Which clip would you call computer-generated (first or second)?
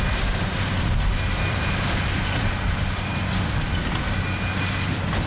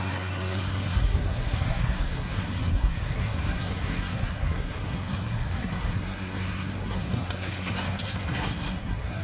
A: second